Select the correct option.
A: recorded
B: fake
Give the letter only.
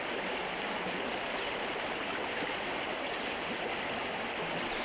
A